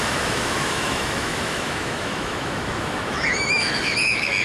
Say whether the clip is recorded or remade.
remade